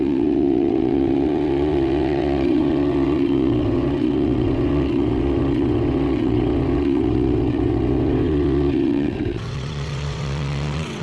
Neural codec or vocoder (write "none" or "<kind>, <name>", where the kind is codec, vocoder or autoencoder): vocoder, WaveNeXt